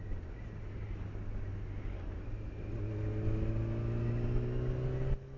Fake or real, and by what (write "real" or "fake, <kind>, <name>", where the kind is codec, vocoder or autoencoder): real